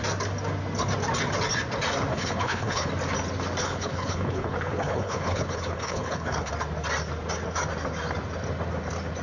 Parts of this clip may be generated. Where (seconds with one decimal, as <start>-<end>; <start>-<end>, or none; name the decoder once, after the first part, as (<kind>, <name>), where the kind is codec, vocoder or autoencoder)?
2.1-2.9 (codec, HILCodec); 3.6-6.5